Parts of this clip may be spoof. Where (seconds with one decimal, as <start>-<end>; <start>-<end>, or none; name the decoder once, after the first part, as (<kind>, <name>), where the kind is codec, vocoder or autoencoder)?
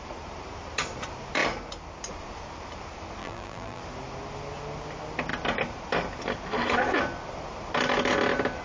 3.2-3.8 (vocoder, BigVGAN v2)